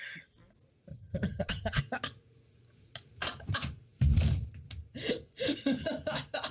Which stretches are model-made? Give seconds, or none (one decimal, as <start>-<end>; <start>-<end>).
0.9-1.8